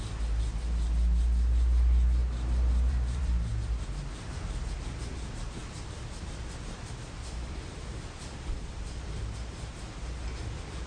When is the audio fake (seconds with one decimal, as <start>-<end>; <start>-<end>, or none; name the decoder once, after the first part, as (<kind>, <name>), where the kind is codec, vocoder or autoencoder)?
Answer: 2.2-3.8 (vocoder, BigVGAN v2); 5.6-9.2